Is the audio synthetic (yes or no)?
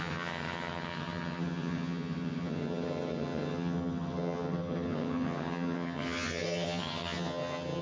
yes